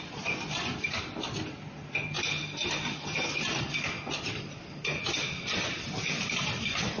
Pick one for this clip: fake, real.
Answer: real